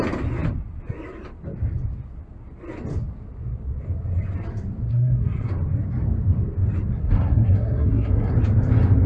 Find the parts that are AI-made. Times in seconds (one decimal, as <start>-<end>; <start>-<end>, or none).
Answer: 4.9-5.5; 7.0-8.3